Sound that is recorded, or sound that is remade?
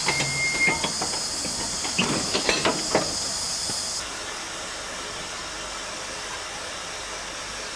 recorded